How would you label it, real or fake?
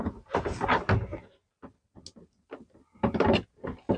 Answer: real